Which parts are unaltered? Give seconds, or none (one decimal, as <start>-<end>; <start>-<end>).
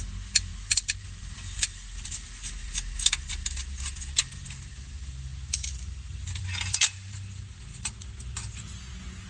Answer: 0.0-9.3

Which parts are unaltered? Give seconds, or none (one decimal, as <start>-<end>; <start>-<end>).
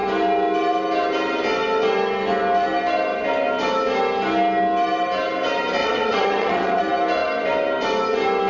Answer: 0.0-5.8; 6.8-8.5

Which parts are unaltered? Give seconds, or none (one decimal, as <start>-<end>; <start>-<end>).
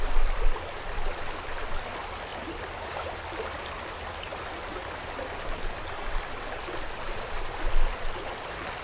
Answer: 0.0-8.8